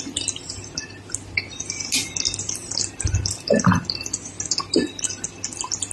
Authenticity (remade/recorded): recorded